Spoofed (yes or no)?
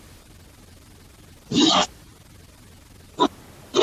no